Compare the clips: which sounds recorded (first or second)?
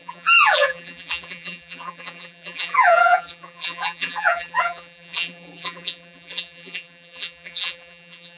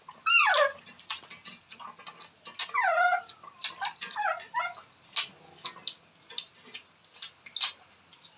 second